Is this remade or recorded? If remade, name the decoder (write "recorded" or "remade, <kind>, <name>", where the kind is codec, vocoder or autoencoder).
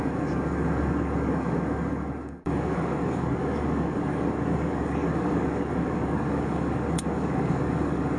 remade, codec, DAC